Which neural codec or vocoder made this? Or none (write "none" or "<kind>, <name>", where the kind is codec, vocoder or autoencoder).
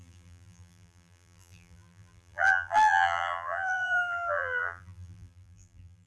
vocoder, BigVGAN v2